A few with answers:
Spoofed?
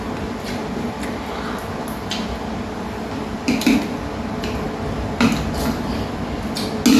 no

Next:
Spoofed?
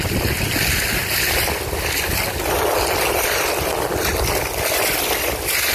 no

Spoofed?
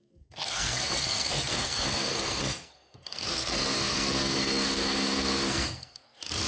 yes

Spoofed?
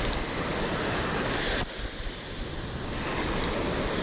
no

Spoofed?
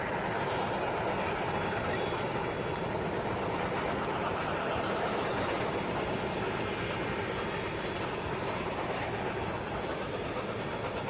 no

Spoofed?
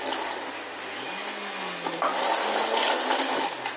no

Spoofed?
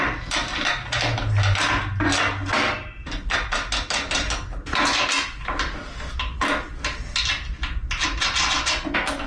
no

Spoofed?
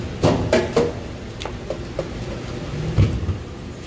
no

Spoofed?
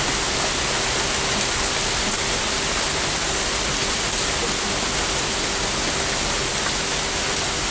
no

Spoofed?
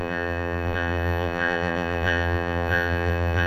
yes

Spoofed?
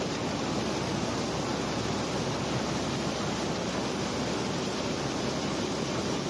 no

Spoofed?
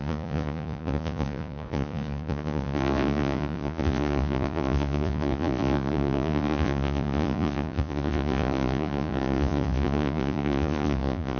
yes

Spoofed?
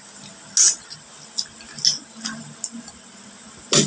no